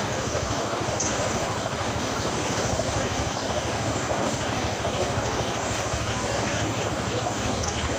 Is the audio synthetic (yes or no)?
yes